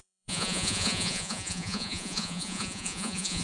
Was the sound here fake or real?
fake